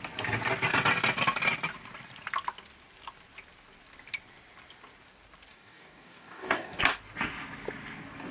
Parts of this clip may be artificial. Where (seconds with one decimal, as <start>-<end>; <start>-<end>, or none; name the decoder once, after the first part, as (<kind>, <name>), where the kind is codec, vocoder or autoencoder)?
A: 5.5-6.8 (codec, DAC)